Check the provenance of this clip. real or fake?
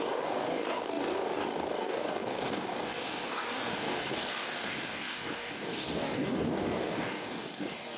fake